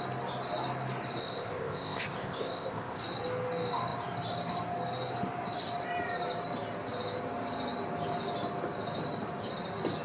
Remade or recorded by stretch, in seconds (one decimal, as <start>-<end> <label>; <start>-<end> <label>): 0.0-1.2 recorded; 1.2-3.0 remade; 3.0-10.0 recorded

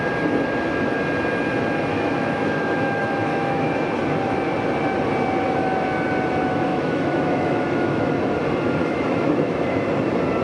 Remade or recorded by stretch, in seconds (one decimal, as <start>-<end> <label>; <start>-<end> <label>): 0.0-1.9 recorded; 1.9-3.7 remade; 3.7-6.7 recorded; 6.7-8.1 remade; 8.1-8.8 recorded; 8.8-9.9 remade; 9.9-10.4 recorded